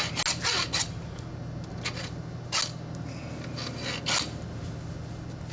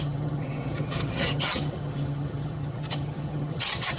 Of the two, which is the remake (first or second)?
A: second